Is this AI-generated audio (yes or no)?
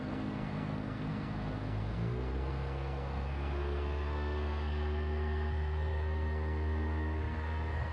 yes